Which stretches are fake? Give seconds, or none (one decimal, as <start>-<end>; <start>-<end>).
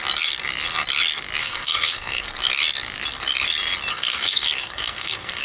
1.4-2.3; 3.9-5.4